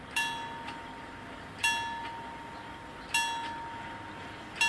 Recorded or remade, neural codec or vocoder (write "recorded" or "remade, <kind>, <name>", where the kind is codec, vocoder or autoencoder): recorded